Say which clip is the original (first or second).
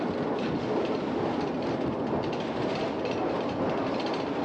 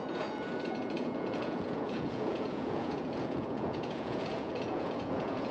first